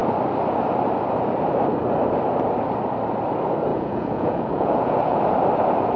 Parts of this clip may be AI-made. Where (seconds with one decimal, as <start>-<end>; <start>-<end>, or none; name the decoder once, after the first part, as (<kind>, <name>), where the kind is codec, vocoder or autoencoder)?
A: 3.7-5.2 (vocoder, Vocos)